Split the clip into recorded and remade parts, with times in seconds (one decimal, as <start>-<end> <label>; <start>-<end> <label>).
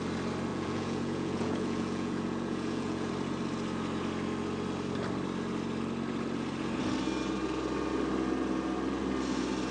0.0-0.5 recorded; 0.5-3.1 remade; 3.1-9.7 recorded